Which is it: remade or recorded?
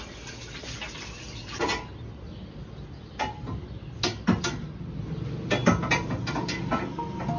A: recorded